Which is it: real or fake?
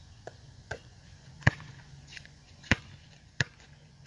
fake